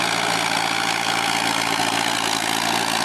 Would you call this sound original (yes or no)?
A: yes